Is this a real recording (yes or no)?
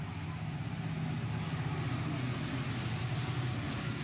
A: yes